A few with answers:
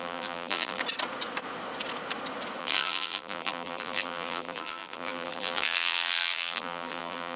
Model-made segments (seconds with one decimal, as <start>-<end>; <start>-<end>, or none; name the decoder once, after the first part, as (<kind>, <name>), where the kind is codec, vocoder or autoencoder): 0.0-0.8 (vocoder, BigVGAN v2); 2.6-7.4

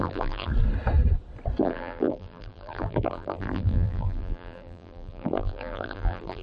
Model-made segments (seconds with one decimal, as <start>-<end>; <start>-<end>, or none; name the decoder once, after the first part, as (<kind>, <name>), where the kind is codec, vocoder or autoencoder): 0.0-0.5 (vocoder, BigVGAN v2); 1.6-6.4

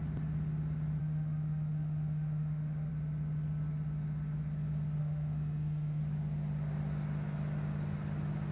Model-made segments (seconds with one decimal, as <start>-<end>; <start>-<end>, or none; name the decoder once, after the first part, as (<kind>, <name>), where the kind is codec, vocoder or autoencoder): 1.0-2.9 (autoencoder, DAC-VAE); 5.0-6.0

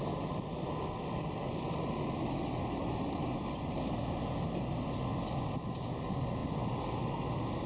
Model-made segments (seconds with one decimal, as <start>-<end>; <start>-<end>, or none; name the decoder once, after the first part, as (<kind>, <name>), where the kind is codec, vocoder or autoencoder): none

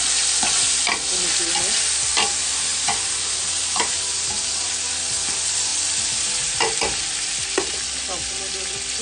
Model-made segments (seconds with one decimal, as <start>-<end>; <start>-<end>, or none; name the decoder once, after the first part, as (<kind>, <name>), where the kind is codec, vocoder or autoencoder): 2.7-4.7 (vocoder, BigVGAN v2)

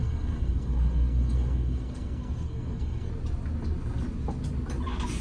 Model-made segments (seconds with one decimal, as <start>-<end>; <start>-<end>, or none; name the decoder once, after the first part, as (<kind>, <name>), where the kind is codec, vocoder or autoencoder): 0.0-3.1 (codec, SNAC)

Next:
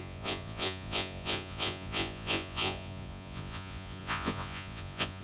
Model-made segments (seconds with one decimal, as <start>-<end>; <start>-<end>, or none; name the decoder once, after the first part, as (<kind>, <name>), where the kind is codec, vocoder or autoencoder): 0.0-5.2 (vocoder, Vocos)

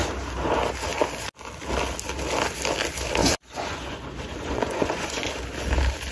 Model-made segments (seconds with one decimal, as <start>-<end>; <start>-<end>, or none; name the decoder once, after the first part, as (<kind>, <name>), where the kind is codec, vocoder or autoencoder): 3.2-5.3 (vocoder, Vocos)